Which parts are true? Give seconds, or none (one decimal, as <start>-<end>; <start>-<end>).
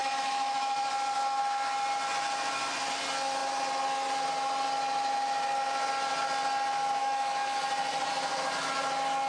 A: 0.9-7.0; 7.6-9.3